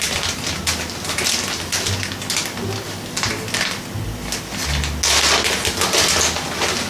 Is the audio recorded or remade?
recorded